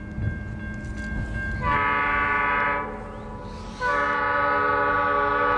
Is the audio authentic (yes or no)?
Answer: yes